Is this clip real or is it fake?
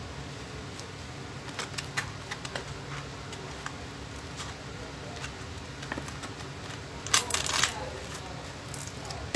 real